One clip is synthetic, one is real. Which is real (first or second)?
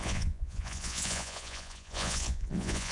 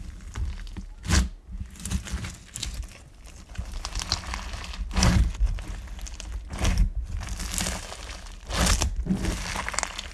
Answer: second